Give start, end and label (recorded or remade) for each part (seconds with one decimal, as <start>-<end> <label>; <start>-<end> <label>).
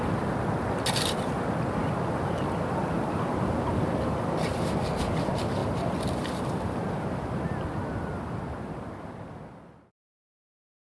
0.0-10.9 recorded